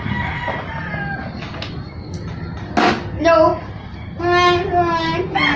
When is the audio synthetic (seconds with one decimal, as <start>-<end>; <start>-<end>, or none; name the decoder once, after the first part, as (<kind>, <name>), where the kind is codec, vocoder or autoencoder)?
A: none